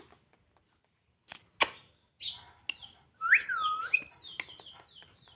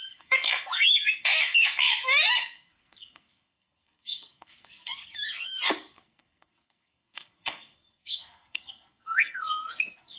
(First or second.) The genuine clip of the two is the first